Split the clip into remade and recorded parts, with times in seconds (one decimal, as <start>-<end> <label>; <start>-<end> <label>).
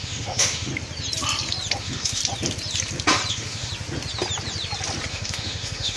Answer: 0.0-0.7 remade; 0.7-1.8 recorded; 1.8-2.2 remade; 2.2-3.3 recorded; 3.3-3.7 remade; 3.7-5.1 recorded; 5.1-6.0 remade